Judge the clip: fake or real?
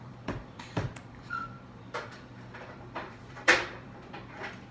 fake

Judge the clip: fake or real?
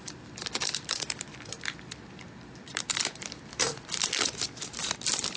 fake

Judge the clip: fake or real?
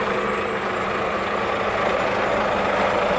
real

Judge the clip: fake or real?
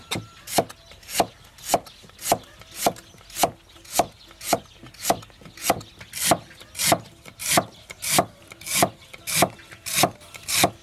real